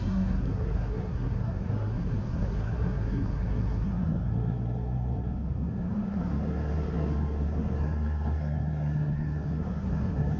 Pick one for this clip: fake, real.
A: fake